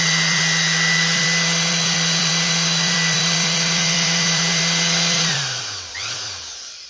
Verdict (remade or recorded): remade